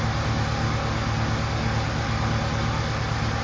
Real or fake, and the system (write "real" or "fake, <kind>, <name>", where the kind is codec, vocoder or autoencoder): real